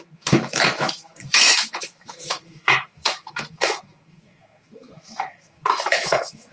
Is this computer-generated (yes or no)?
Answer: yes